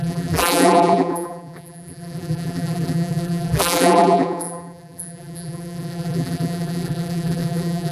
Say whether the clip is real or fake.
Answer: fake